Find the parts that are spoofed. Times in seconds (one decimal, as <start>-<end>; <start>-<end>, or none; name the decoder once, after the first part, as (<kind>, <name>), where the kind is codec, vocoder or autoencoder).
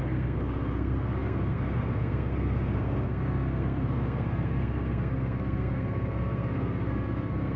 0.0-7.6 (codec, SNAC)